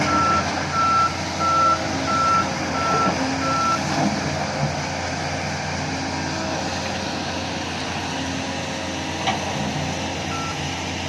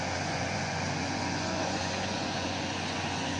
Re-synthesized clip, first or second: second